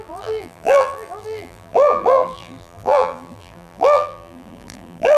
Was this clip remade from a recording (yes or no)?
yes